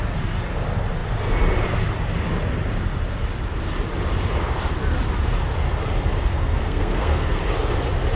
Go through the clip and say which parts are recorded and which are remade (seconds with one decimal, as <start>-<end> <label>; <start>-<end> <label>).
0.0-6.3 recorded; 6.3-7.4 remade; 7.4-8.2 recorded